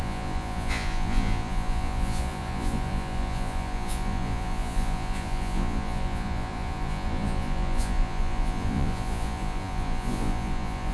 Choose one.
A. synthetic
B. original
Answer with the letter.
A